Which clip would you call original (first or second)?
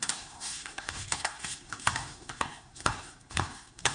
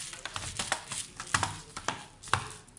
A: second